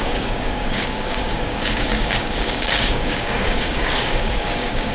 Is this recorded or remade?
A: remade